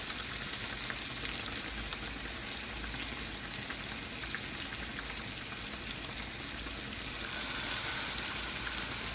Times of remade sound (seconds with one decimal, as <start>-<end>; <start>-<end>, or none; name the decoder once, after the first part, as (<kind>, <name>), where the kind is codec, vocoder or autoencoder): none